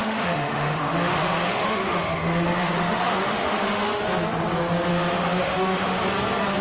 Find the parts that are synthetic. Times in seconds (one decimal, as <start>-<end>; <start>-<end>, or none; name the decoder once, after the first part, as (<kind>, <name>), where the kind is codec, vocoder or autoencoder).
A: 0.0-4.0 (autoencoder, DAC-VAE); 4.9-6.0